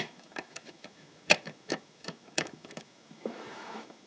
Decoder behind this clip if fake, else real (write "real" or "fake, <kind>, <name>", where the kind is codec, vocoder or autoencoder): fake, autoencoder, DAC-VAE